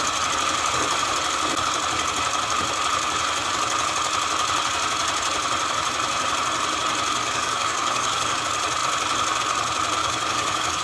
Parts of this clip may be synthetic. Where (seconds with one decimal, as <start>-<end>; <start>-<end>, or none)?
7.2-8.4; 10.0-10.8